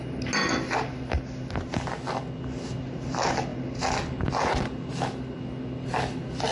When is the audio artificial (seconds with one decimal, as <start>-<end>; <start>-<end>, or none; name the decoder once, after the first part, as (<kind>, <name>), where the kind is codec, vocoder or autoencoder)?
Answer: none